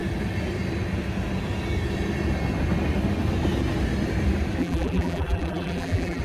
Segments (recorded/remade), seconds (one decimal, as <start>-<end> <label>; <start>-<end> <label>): 0.0-4.6 recorded; 4.6-6.2 remade